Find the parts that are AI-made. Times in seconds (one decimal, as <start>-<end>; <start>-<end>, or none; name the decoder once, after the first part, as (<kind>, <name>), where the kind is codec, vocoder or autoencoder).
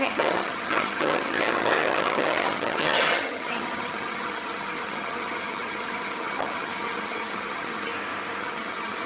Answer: 0.0-7.9 (vocoder, HiFi-GAN); 8.4-9.1